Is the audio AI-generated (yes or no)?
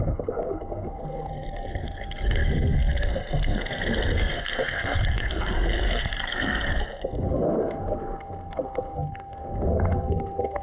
yes